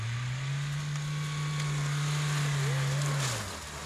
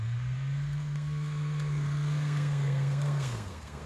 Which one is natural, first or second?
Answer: first